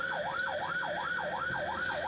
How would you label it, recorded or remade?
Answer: recorded